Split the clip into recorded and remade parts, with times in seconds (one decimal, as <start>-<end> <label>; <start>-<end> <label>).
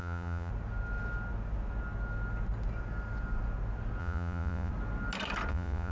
0.0-0.5 remade; 0.5-4.0 recorded; 4.0-4.7 remade; 4.7-5.5 recorded; 5.5-5.9 remade